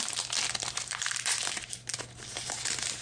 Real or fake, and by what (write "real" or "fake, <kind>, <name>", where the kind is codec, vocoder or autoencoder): real